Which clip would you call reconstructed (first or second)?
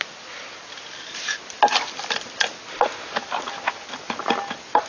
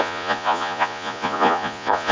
second